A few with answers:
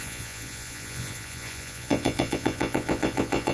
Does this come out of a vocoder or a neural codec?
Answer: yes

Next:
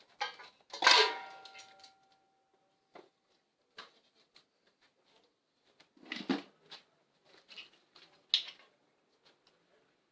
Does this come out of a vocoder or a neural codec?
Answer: no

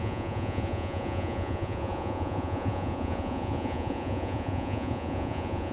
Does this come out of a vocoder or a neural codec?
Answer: yes